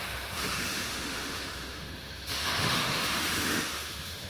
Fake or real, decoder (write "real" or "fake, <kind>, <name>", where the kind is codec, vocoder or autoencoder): fake, autoencoder, DAC-VAE